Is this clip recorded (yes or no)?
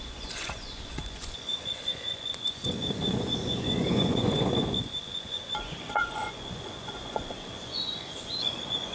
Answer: no